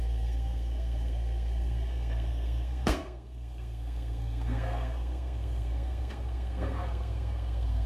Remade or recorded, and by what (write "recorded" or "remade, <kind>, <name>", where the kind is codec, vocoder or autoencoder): remade, codec, SNAC